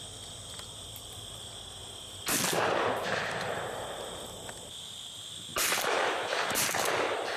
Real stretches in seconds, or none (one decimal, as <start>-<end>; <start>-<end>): 0.0-7.4